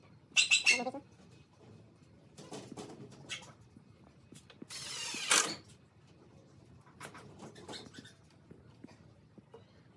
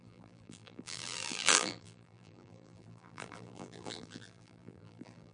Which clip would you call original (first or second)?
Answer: first